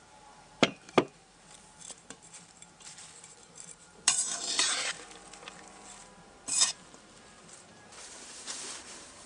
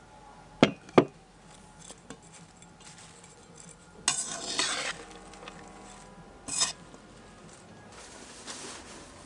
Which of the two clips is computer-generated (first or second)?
first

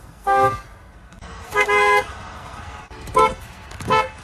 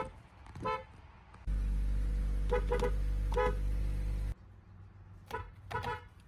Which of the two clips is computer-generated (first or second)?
first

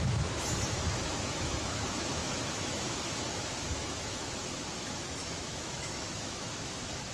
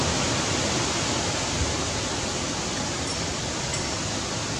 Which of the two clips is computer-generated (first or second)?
first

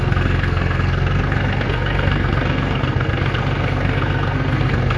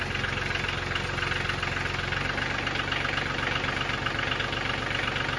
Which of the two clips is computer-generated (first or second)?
first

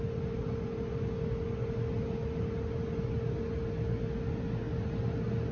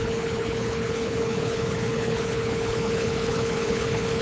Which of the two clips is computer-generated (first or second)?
second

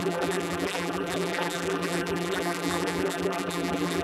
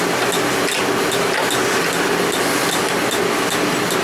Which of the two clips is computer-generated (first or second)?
first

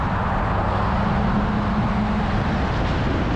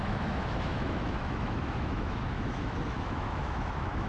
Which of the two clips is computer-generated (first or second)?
second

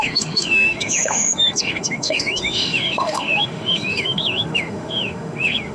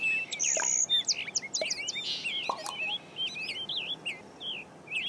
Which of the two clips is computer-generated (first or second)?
first